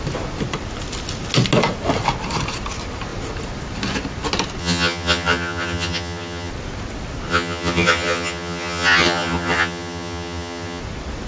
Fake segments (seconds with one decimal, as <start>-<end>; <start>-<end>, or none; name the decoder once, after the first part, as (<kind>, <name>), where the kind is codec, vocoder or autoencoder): 4.6-6.5 (vocoder, HiFi-GAN); 7.3-10.8